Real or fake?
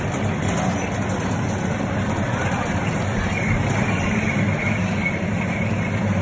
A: real